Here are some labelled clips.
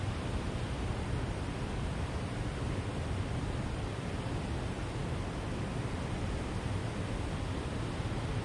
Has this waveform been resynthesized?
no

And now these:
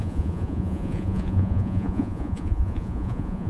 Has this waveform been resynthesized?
yes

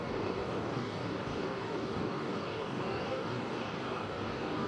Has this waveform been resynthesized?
yes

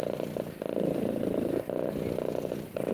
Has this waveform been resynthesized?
no